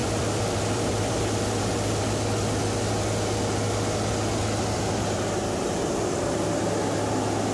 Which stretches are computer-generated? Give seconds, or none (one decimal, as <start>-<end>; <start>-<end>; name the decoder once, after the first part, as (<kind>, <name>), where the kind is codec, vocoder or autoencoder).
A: 0.0-1.6 (vocoder, BigVGAN v2)